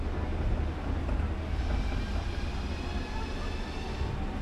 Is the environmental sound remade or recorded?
recorded